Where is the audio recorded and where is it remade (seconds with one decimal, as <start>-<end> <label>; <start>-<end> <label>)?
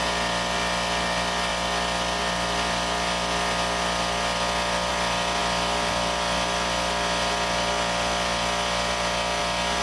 0.0-9.8 recorded